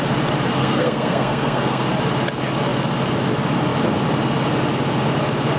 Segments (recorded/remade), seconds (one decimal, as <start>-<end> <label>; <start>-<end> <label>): 0.0-0.6 recorded; 0.6-1.8 remade; 1.8-5.6 recorded